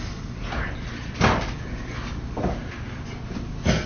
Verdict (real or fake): real